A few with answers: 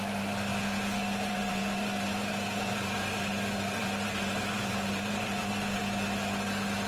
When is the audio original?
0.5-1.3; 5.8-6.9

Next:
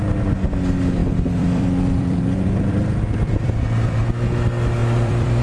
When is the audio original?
0.0-1.0; 4.0-4.8

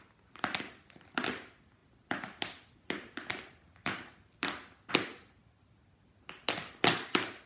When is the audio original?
0.0-7.5

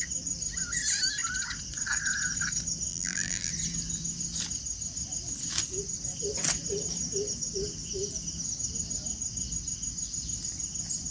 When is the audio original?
0.0-2.9; 3.5-11.1

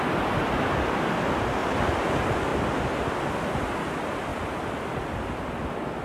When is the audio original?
0.0-1.6; 2.1-6.0

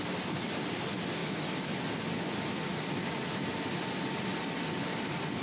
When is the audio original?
0.0-1.2; 3.3-4.3